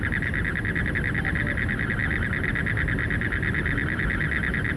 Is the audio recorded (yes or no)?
yes